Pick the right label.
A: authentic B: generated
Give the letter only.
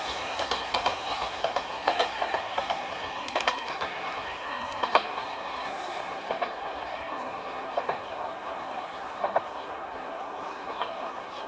B